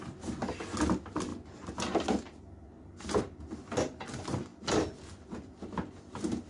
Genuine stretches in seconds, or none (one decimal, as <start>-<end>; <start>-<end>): 0.0-6.5